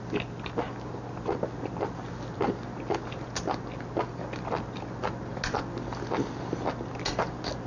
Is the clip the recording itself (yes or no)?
yes